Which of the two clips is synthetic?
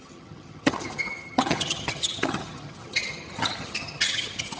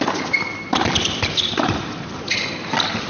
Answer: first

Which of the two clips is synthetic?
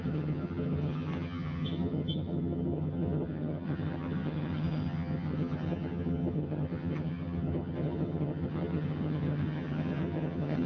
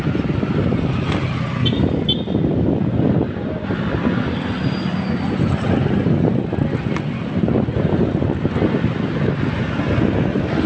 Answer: first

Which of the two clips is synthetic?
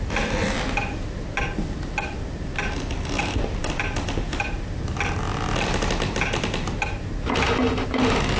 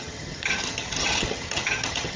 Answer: second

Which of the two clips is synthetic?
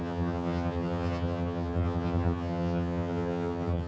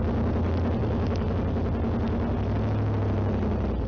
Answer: first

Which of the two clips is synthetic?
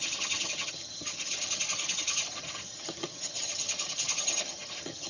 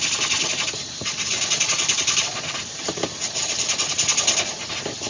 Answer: first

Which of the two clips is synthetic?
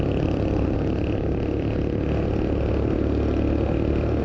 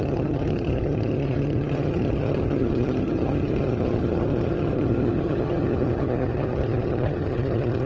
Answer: second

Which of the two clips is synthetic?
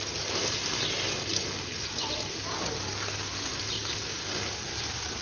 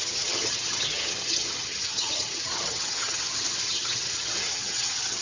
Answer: second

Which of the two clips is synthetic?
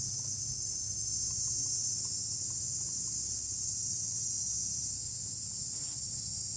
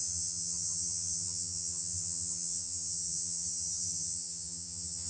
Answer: second